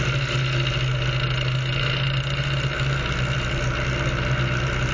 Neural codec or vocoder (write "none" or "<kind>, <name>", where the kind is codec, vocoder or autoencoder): none